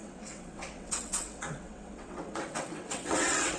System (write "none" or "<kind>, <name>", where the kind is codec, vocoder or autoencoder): vocoder, WaveNeXt